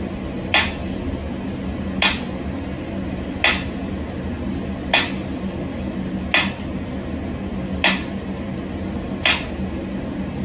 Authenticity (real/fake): real